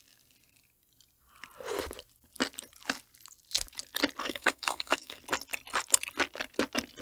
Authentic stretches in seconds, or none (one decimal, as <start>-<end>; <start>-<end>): 0.0-4.2; 5.2-7.0